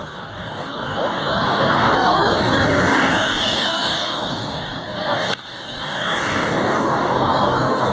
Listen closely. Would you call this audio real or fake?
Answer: fake